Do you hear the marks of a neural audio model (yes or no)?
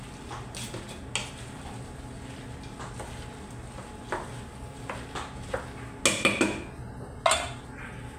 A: no